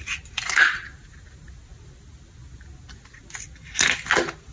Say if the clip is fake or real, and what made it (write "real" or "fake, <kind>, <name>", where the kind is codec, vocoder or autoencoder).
real